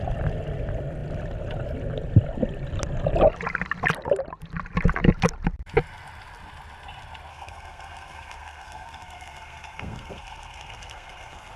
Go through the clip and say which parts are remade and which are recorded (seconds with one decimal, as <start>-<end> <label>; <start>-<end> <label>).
0.0-7.3 recorded; 7.3-11.6 remade